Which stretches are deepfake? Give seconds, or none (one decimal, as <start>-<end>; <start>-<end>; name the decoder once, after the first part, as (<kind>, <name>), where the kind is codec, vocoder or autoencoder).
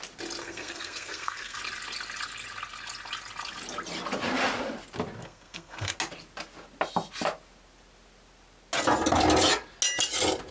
0.4-1.6 (codec, SNAC); 5.2-5.9